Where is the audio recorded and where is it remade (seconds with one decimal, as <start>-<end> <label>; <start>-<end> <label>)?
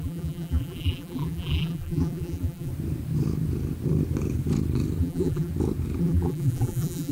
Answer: 0.0-2.7 remade; 2.7-5.0 recorded; 5.0-5.5 remade; 5.5-6.0 recorded; 6.0-7.1 remade